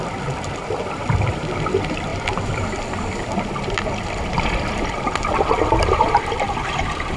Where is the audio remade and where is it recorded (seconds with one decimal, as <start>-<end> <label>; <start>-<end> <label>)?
0.0-7.2 remade